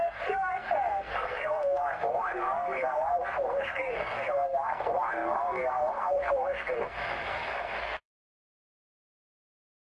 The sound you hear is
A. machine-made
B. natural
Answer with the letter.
A